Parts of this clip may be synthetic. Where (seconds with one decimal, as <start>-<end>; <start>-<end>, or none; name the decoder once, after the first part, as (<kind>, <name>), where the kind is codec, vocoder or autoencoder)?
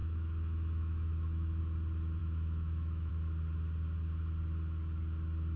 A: 0.0-1.6 (autoencoder, DAC-VAE); 2.2-3.1